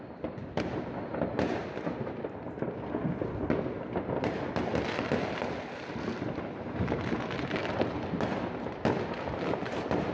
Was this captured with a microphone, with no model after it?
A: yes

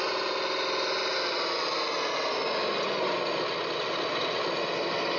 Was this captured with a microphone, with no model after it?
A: yes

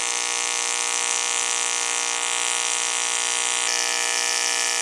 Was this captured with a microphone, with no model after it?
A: yes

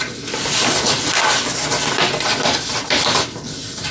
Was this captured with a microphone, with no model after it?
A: yes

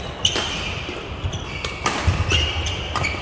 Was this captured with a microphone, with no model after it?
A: no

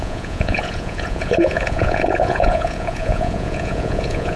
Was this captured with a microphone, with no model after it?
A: no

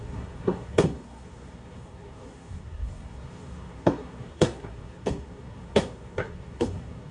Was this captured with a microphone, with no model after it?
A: no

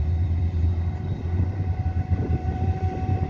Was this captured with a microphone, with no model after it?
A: no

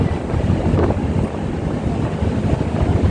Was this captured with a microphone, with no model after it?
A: yes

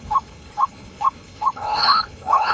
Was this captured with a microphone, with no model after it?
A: no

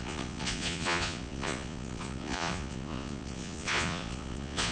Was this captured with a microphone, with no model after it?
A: no